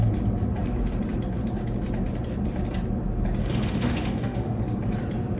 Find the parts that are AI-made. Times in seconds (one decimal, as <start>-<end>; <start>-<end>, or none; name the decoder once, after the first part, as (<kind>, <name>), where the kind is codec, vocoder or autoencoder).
3.4-4.6 (autoencoder, DAC-VAE)